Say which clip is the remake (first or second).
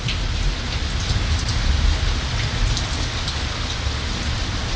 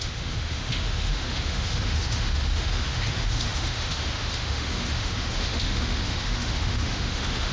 second